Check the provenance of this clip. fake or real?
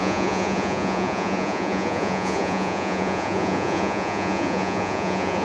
fake